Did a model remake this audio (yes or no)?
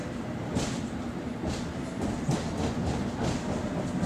no